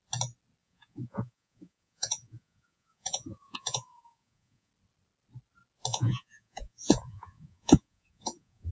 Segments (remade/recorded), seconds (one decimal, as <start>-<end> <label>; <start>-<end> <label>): 0.0-0.6 recorded; 0.6-4.7 remade; 4.7-5.9 recorded; 5.9-8.7 remade